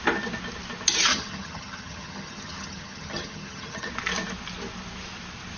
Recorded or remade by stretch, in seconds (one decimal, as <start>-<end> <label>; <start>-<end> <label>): 0.0-1.1 recorded; 1.1-3.9 remade; 3.9-5.6 recorded